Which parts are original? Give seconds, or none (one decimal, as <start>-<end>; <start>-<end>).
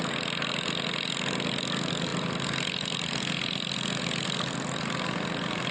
0.0-5.7